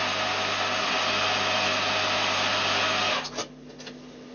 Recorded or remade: recorded